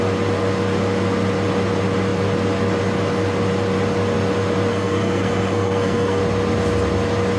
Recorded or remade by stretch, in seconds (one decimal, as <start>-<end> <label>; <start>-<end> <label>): 0.0-4.7 recorded; 4.7-6.2 remade; 6.2-7.4 recorded